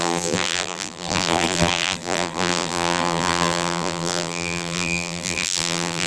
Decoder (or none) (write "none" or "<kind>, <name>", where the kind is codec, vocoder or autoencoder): vocoder, BigVGAN v2